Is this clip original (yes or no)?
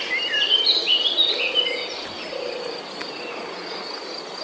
yes